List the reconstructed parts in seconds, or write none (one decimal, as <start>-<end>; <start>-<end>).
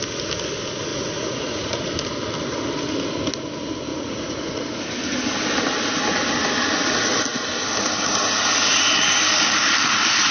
0.9-1.9; 3.9-4.8